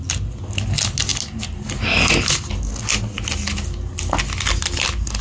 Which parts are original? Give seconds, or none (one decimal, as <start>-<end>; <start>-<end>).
0.0-5.2